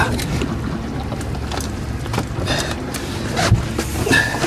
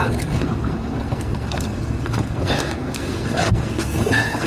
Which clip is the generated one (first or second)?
second